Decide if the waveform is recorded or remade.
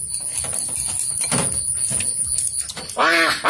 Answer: recorded